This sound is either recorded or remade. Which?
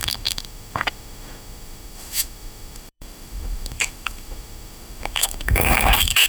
remade